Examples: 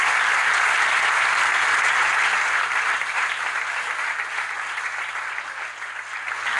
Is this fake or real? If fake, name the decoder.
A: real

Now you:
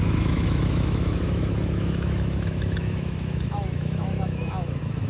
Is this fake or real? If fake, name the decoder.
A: fake, autoencoder, DAC-VAE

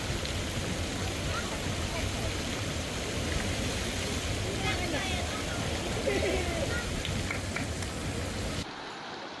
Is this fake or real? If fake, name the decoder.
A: real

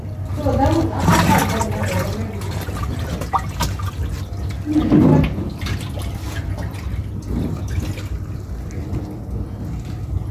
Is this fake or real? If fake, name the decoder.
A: real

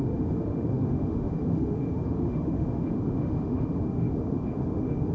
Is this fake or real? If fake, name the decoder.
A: fake, autoencoder, DAC-VAE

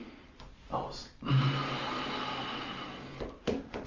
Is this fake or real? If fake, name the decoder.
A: real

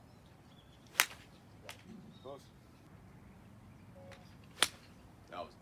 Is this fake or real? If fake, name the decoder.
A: real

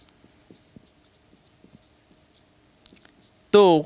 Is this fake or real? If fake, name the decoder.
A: real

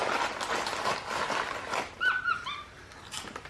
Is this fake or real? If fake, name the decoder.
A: real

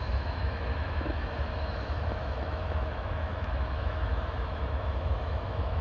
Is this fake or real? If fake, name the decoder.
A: fake, autoencoder, DAC-VAE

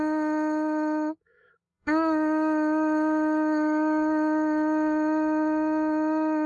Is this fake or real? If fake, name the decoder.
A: fake, autoencoder, DAC-VAE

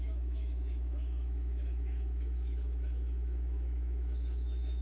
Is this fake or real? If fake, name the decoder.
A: fake, autoencoder, DAC-VAE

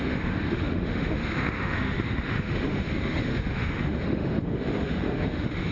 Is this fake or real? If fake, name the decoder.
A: fake, autoencoder, DAC-VAE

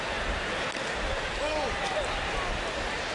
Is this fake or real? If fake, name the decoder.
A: real